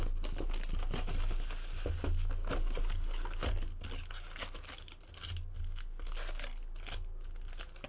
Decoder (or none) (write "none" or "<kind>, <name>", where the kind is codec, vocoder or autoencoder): none